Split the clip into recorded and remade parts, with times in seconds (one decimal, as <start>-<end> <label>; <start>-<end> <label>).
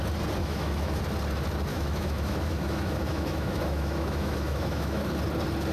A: 0.0-0.4 recorded; 0.4-1.0 remade; 1.0-1.7 recorded; 1.7-5.1 remade; 5.1-5.7 recorded